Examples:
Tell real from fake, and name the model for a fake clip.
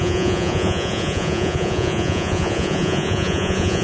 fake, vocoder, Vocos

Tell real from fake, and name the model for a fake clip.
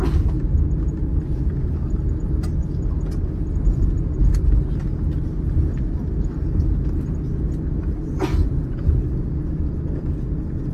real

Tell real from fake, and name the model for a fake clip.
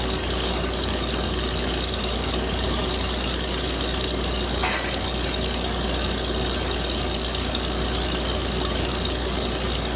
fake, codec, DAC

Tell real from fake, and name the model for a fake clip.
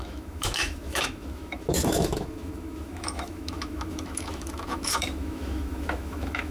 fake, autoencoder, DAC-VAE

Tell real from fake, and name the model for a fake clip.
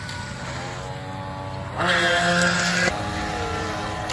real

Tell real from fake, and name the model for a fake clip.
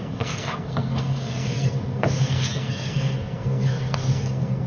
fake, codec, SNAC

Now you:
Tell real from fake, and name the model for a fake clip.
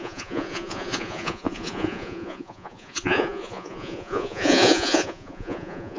fake, vocoder, Vocos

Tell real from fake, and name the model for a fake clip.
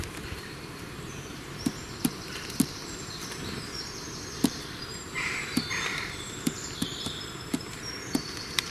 fake, vocoder, BigVGAN v2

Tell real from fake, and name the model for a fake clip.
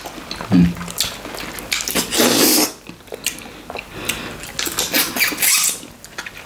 real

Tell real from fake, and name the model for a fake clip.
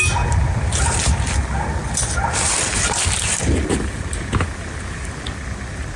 real